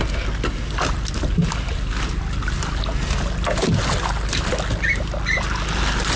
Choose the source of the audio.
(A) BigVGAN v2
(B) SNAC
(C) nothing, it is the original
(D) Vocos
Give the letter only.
C